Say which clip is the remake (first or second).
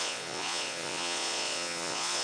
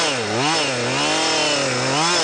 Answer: first